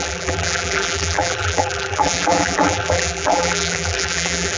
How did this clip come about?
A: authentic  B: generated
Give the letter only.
B